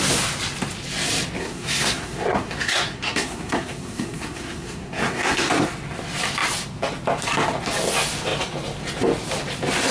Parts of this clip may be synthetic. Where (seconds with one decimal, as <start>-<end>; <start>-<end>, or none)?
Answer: 1.4-5.5